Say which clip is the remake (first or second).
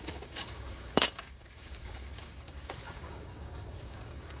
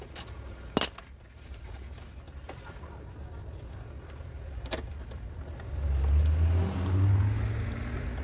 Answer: first